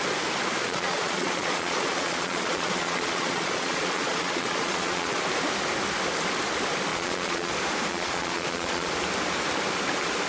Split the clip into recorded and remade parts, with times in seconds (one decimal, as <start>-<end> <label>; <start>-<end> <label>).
0.0-0.6 recorded; 0.6-5.2 remade; 5.2-6.9 recorded; 6.9-7.5 remade; 7.5-7.9 recorded; 7.9-8.9 remade; 8.9-10.3 recorded